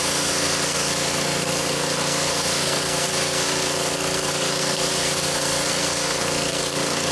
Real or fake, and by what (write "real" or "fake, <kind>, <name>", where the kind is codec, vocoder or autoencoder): fake, codec, SNAC